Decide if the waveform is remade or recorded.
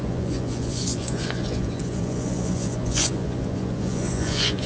remade